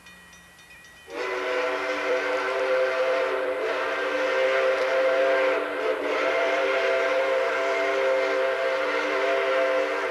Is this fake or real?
real